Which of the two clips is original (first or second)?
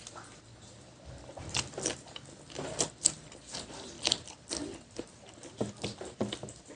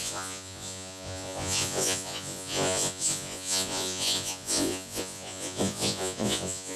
first